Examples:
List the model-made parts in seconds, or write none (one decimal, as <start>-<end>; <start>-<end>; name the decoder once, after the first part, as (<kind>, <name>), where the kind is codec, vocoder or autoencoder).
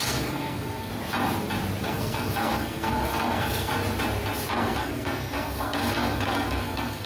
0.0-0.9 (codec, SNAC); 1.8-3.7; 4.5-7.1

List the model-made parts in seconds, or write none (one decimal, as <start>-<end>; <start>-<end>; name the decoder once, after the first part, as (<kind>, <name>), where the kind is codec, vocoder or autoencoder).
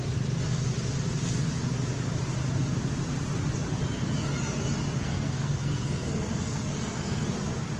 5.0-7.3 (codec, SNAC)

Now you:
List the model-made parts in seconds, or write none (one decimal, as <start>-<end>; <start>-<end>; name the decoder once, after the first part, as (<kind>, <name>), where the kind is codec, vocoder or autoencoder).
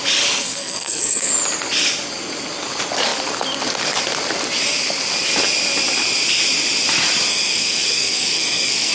0.4-1.3 (codec, SNAC); 7.3-8.9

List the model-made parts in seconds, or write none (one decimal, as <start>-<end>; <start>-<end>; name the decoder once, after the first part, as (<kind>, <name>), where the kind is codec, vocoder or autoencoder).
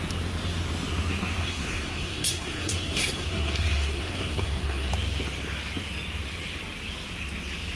1.4-4.9 (codec, SNAC)